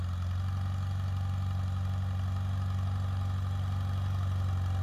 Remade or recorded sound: recorded